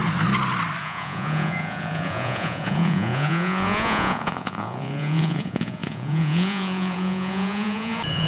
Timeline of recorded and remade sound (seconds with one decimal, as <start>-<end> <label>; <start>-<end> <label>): 0.0-0.8 recorded; 0.8-8.3 remade